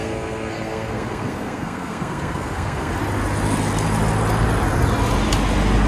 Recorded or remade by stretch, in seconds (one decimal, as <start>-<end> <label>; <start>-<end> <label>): 0.0-2.9 remade; 2.9-5.9 recorded